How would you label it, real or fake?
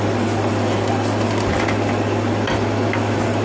real